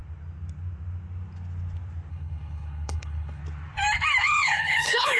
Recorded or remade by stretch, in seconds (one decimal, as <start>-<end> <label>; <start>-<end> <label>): 0.0-2.1 recorded; 2.1-3.4 remade; 3.4-4.2 recorded; 4.2-5.2 remade